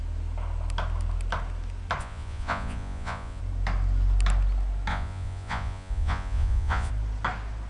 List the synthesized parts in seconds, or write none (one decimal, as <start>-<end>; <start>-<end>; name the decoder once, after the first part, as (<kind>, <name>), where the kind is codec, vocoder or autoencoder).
2.0-3.4 (vocoder, Vocos); 4.9-6.9